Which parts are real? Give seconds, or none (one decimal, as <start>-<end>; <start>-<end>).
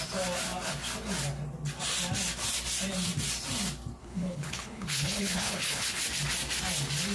0.0-4.0; 6.0-7.1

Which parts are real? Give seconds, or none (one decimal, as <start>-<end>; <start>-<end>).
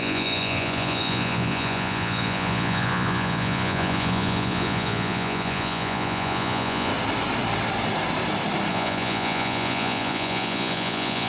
6.9-8.7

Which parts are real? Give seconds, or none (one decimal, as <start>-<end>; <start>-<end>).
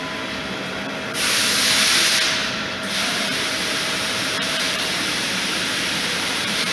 0.0-2.4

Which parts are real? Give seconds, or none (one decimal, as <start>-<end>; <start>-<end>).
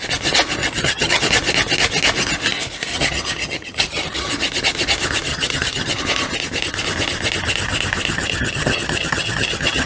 0.0-0.6; 1.2-2.9; 4.3-5.3; 6.0-8.1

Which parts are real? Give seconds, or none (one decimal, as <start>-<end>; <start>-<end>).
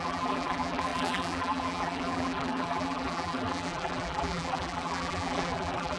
none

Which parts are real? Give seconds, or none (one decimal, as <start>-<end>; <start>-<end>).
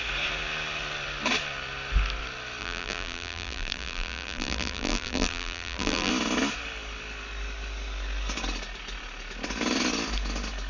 0.0-2.6; 6.1-10.7